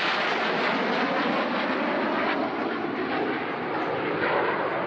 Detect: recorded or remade recorded